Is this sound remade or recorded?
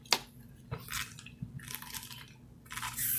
recorded